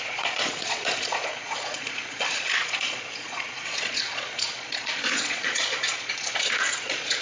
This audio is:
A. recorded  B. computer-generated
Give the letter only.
B